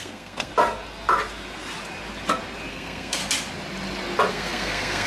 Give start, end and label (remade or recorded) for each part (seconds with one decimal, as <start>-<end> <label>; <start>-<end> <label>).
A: 0.0-0.5 remade; 0.5-2.7 recorded; 2.7-3.2 remade; 3.2-4.3 recorded; 4.3-5.1 remade